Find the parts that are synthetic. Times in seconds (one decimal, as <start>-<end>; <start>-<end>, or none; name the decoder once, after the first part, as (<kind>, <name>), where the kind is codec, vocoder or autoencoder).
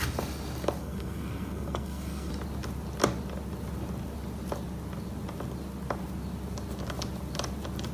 0.8-2.3 (codec, SNAC)